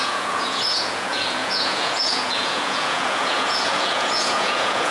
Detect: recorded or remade remade